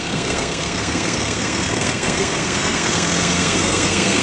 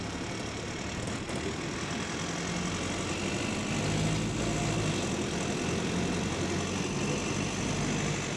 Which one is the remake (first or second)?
first